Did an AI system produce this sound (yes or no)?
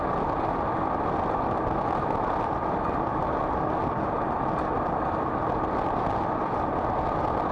no